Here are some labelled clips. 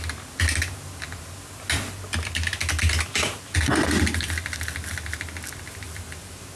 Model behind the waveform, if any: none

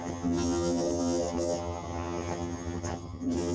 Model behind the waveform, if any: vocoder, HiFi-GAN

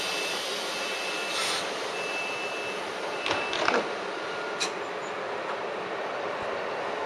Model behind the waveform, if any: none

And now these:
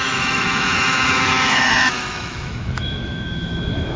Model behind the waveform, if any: autoencoder, DAC-VAE